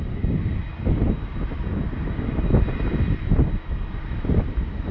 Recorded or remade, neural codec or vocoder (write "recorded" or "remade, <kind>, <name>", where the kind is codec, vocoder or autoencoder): recorded